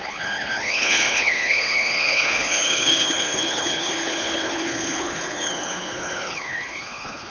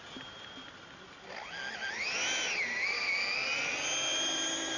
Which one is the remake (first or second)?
first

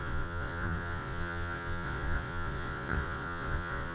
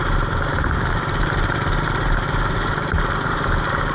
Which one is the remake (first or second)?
first